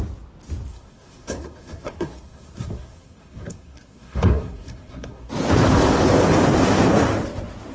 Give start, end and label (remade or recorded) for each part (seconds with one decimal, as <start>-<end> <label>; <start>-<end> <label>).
0.0-0.7 recorded; 0.7-5.3 remade; 5.3-7.7 recorded